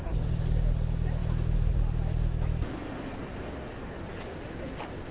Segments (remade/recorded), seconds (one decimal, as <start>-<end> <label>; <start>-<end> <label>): 0.0-5.1 recorded

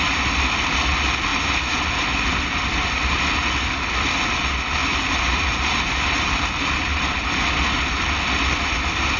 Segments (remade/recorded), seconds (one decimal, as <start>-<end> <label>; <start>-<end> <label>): 0.0-1.3 recorded; 1.3-1.9 remade; 1.9-4.8 recorded; 4.8-7.3 remade; 7.3-9.2 recorded

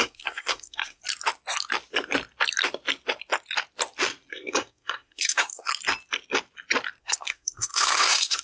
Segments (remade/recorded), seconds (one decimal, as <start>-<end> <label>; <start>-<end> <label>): 0.0-1.0 remade; 1.0-4.3 recorded; 4.3-5.7 remade; 5.7-7.0 recorded; 7.0-8.4 remade

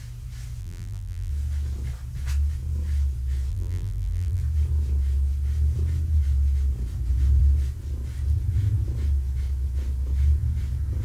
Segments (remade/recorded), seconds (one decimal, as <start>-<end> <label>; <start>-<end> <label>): 0.0-0.6 recorded; 0.6-1.3 remade; 1.3-3.5 recorded; 3.5-4.4 remade; 4.4-11.0 recorded

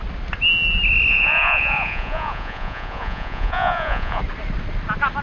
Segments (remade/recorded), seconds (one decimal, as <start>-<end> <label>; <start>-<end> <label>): 0.0-1.1 recorded; 1.1-4.2 remade; 4.2-5.2 recorded

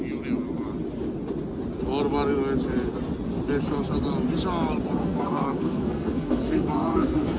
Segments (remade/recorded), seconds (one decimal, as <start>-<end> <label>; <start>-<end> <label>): 0.0-5.0 recorded; 5.0-7.4 remade